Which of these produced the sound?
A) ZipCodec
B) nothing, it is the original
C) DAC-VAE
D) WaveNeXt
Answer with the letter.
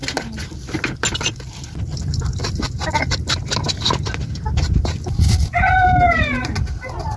B